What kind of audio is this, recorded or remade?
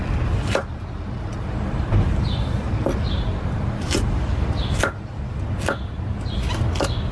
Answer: recorded